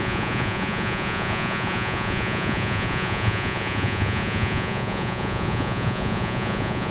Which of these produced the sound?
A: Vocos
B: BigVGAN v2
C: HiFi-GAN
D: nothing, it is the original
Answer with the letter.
A